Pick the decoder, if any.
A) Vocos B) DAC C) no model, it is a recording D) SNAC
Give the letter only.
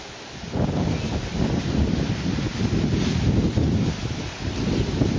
C